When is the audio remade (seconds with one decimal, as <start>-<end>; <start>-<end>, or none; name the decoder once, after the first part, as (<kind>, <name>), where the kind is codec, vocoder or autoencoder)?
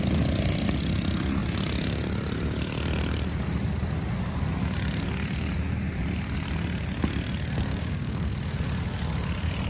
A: 7.7-8.3 (codec, DAC)